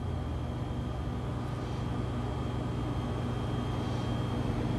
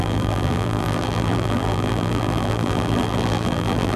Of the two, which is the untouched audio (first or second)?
first